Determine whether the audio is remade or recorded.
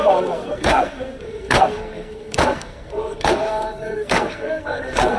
remade